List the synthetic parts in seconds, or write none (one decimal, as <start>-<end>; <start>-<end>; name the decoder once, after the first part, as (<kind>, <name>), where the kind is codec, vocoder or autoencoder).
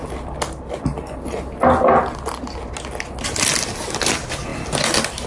none